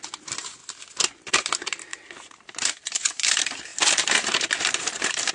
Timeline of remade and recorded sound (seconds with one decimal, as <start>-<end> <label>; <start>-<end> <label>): 0.0-0.6 remade; 0.6-1.1 recorded; 1.1-5.3 remade